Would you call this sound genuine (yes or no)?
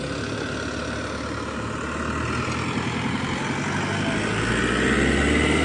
yes